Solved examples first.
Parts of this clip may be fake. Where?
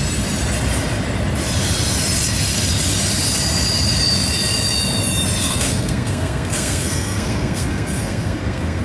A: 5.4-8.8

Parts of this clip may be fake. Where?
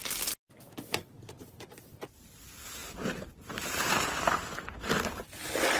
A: 2.8-4.9